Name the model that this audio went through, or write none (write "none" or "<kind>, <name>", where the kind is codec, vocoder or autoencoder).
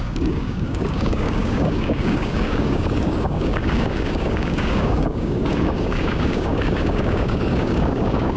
codec, DAC